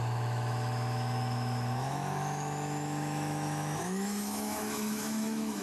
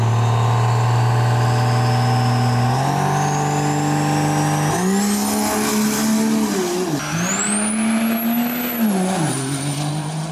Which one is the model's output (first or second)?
first